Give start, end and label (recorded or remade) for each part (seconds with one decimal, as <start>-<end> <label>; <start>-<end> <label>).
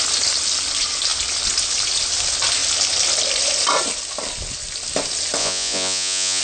0.0-5.4 recorded; 5.4-6.4 remade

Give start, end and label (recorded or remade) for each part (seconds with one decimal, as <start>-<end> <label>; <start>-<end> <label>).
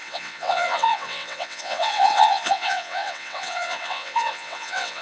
0.0-5.0 remade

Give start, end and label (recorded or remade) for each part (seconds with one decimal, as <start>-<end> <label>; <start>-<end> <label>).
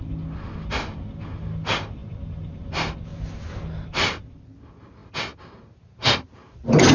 0.0-2.0 recorded; 2.0-2.7 remade; 2.7-6.9 recorded